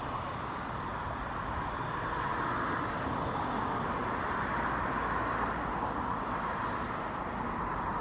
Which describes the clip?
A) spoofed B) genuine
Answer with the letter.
B